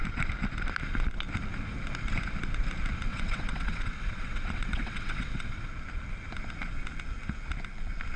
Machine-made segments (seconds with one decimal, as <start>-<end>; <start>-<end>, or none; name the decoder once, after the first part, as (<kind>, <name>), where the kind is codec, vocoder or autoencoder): 3.1-5.7 (vocoder, WaveNeXt)